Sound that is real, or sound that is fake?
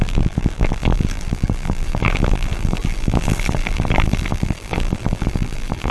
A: fake